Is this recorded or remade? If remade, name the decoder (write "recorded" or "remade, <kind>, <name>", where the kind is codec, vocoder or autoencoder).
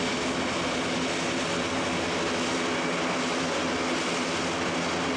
recorded